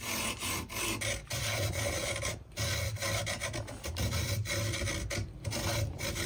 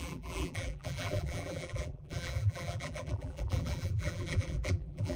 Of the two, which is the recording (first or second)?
first